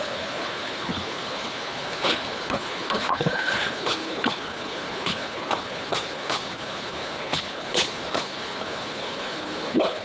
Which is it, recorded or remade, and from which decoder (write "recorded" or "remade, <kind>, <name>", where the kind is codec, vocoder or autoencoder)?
remade, codec, HILCodec